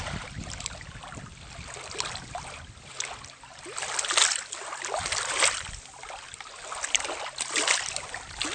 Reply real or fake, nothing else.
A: real